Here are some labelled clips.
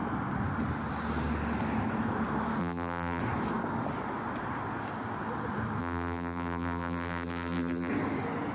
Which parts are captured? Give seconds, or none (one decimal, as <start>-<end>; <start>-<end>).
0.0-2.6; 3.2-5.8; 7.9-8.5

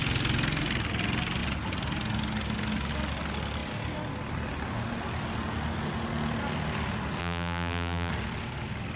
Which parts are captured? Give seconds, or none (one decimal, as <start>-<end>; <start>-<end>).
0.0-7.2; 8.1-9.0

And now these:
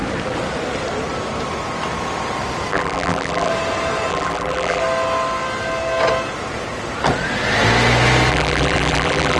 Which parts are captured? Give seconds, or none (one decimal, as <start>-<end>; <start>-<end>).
0.0-2.7; 3.5-4.1; 4.8-8.3